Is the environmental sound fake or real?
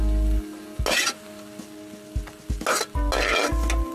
real